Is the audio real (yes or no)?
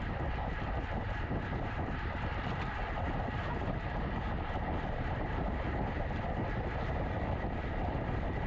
yes